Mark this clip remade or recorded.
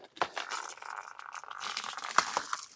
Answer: recorded